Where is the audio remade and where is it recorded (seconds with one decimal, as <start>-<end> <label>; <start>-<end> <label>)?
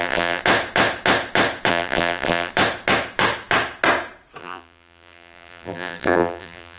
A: 0.0-0.4 remade; 0.4-1.7 recorded; 1.7-2.5 remade; 2.5-4.4 recorded; 4.4-6.8 remade